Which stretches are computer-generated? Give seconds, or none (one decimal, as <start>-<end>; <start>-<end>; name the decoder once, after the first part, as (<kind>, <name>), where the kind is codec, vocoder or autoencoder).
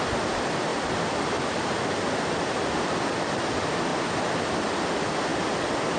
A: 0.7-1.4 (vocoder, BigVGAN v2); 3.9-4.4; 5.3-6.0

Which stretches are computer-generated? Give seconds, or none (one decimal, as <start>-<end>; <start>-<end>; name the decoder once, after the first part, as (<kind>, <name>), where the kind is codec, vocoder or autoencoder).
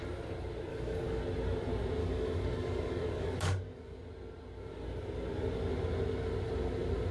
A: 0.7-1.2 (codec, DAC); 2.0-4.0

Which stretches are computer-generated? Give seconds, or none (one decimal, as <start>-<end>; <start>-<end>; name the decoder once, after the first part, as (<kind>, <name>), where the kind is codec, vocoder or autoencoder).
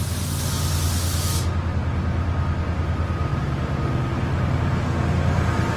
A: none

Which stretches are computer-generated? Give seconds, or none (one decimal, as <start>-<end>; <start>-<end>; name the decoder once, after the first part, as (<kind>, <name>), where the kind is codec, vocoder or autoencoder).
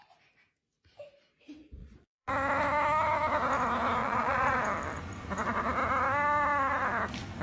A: 1.8-2.3 (vocoder, Vocos); 4.0-4.6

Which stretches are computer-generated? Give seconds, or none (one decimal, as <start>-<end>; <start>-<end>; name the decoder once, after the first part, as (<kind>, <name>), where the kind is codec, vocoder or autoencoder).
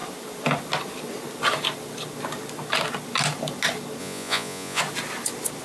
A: 4.0-4.8 (vocoder, Vocos)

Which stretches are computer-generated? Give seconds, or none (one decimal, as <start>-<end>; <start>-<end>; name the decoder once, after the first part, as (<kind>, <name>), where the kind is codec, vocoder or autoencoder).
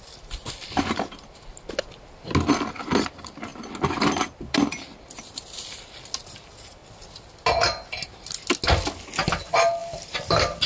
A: 3.5-4.6 (vocoder, BigVGAN v2); 9.8-10.7